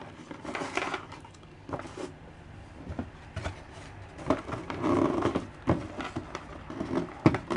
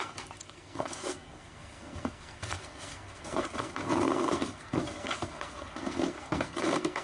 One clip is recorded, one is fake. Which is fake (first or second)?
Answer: second